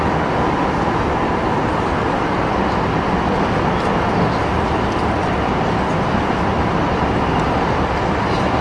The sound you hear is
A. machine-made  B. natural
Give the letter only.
B